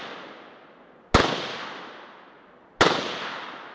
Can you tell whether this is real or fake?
real